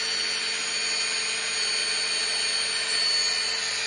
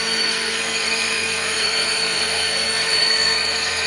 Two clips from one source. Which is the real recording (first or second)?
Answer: first